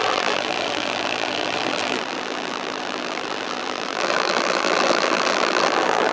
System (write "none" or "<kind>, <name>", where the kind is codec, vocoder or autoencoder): vocoder, BigVGAN v2